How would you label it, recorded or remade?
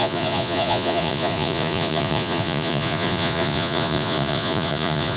remade